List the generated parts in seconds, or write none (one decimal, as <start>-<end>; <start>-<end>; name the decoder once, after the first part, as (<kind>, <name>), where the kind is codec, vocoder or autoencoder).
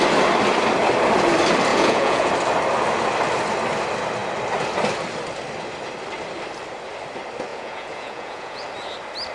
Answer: 1.7-2.3 (vocoder, Vocos); 7.5-8.6